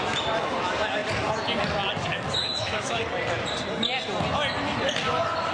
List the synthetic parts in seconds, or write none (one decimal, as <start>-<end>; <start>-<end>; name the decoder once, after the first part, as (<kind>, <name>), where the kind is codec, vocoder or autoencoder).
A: 2.5-3.0 (autoencoder, DAC-VAE)